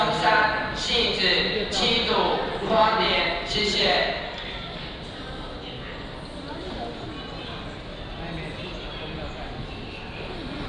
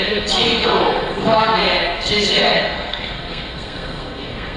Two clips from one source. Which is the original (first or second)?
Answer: first